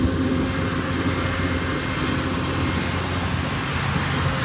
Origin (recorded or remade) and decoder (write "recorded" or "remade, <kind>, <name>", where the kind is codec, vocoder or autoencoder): recorded